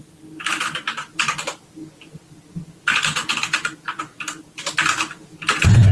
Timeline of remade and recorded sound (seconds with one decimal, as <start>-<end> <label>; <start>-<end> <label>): 0.0-1.0 remade; 1.0-4.0 recorded; 4.0-5.9 remade

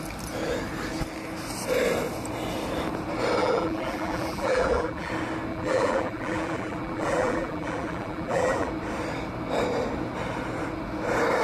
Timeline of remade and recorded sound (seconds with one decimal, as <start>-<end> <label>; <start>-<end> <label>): 0.0-3.4 recorded; 3.4-5.1 remade; 5.1-5.5 recorded; 5.5-8.7 remade; 8.7-11.4 recorded

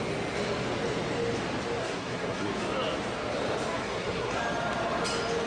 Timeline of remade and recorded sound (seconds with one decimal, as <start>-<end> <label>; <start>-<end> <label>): 0.0-1.8 recorded; 1.8-2.5 remade; 2.5-3.8 recorded; 3.8-4.4 remade; 4.4-5.5 recorded